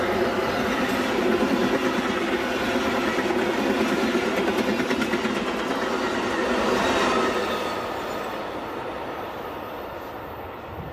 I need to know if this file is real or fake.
real